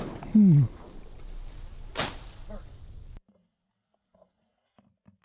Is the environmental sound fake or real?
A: real